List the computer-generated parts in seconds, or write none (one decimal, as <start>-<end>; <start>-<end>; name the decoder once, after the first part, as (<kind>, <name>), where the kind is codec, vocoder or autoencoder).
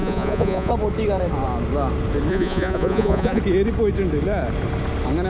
0.0-0.7 (vocoder, Vocos); 2.3-3.4